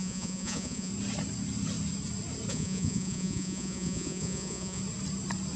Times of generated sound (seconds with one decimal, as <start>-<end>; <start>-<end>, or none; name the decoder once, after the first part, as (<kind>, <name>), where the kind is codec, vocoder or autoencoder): 0.0-0.9 (vocoder, Vocos); 2.5-4.8